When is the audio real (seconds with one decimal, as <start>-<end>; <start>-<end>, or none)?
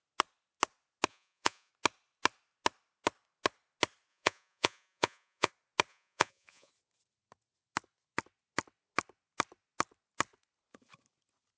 0.0-1.1; 1.7-4.1; 5.5-5.9; 6.7-11.6